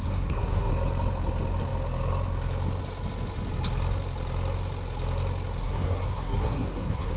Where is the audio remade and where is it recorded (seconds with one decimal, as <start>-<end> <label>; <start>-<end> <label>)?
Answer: 0.0-0.7 remade; 0.7-5.6 recorded; 5.6-7.2 remade